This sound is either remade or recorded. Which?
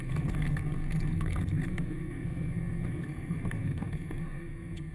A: remade